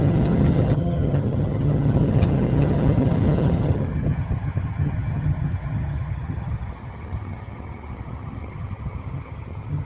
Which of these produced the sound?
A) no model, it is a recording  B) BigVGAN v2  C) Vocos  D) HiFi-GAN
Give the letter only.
D